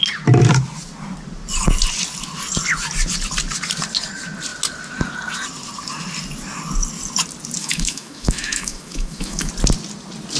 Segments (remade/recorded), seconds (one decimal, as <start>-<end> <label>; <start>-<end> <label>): 0.0-7.6 recorded; 7.6-9.5 remade; 9.5-10.4 recorded